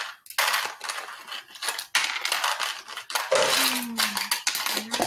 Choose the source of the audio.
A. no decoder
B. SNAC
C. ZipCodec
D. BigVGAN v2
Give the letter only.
A